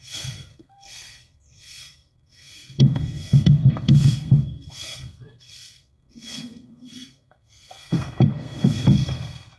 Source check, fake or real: fake